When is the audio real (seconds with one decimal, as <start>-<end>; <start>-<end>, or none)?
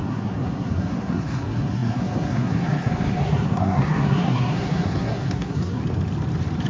5.8-6.7